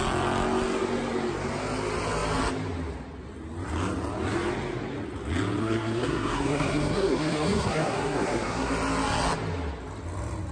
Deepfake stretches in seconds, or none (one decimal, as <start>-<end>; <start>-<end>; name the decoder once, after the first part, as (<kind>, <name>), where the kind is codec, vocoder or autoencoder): 5.6-8.7 (codec, SNAC)